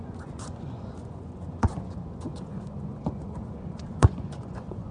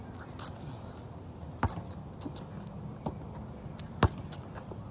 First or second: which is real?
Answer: second